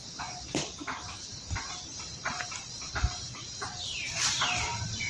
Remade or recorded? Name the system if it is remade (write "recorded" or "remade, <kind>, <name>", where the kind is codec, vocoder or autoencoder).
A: recorded